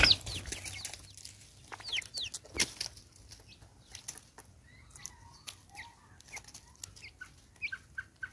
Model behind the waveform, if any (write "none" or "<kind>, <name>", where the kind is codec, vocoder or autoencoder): none